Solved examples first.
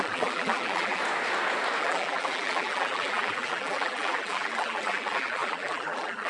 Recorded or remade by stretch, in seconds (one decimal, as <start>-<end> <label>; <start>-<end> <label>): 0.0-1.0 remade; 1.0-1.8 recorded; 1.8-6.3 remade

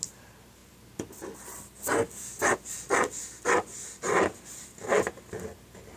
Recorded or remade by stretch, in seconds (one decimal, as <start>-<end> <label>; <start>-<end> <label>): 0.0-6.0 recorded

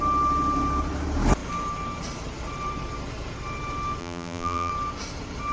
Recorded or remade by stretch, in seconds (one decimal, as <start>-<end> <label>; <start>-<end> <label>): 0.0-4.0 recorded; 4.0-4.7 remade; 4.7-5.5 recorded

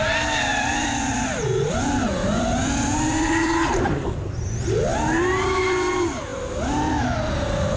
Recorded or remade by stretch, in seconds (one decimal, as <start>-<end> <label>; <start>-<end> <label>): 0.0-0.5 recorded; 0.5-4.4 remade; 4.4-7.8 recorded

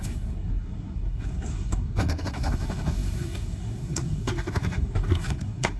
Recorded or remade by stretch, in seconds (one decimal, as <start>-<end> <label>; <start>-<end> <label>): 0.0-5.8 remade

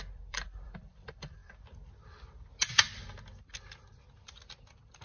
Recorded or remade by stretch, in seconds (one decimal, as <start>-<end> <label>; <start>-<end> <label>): 0.0-1.4 remade; 1.4-4.4 recorded; 4.4-5.0 remade

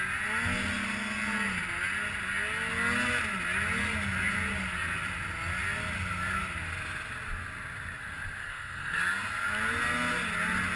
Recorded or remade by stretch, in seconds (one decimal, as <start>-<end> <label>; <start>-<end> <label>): 0.0-8.4 recorded; 8.4-9.0 remade; 9.0-10.8 recorded